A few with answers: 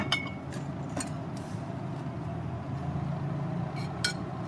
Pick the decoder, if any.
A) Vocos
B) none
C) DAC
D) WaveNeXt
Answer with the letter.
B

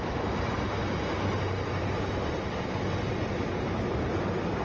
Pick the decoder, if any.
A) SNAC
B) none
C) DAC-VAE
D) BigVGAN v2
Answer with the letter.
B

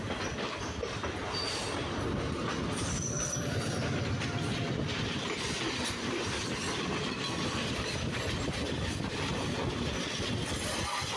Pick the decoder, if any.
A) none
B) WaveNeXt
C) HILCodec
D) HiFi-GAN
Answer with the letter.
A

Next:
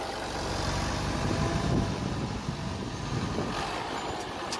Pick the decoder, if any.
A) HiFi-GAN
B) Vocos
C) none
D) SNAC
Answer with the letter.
C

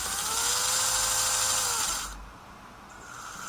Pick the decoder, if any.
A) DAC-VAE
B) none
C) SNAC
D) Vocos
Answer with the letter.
B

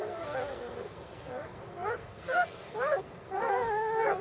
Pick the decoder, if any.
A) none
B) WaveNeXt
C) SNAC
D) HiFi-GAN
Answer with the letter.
C